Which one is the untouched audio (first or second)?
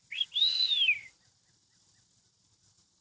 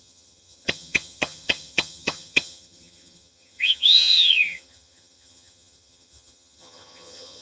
first